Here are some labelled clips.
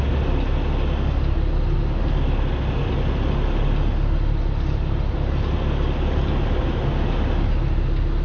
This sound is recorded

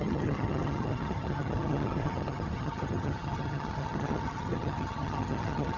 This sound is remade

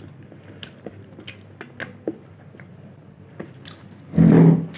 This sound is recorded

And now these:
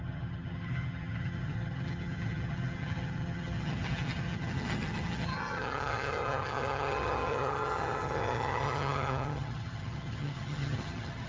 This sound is remade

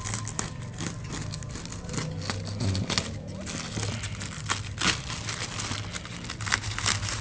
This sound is recorded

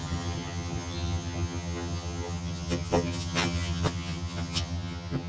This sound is remade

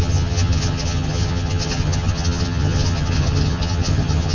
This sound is remade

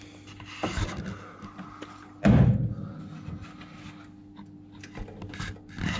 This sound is recorded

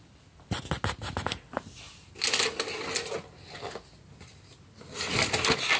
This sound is recorded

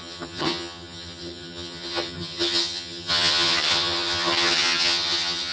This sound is remade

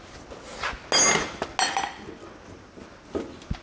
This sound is recorded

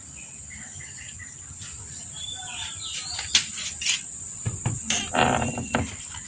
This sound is recorded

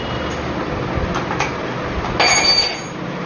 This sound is recorded